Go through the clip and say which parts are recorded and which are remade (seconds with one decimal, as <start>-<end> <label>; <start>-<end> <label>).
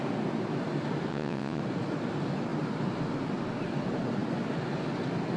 0.0-1.1 recorded; 1.1-1.6 remade; 1.6-5.4 recorded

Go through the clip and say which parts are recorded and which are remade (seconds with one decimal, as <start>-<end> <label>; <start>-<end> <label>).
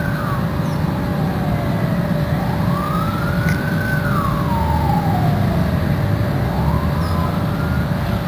0.0-8.3 recorded